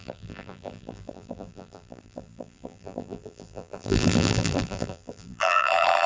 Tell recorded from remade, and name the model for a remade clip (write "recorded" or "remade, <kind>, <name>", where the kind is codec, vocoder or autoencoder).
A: remade, vocoder, BigVGAN v2